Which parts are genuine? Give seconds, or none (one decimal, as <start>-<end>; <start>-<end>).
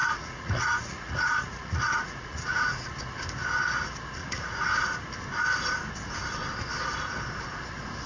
2.9-4.2; 4.8-8.1